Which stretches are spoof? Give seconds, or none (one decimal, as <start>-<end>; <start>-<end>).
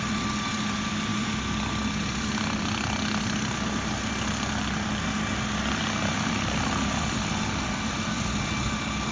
none